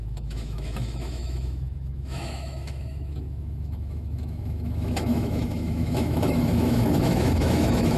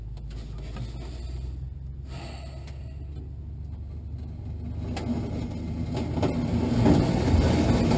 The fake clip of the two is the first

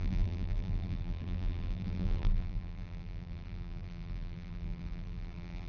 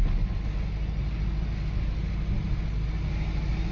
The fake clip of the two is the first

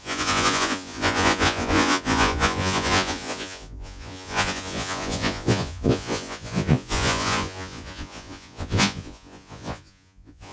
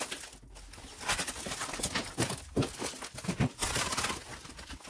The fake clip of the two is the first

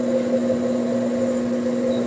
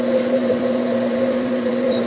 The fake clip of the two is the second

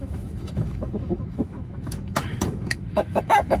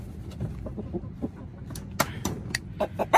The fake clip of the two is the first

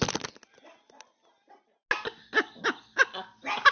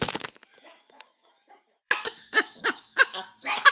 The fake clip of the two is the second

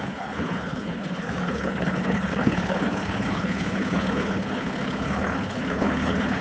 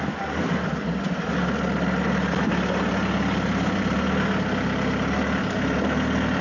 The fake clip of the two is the first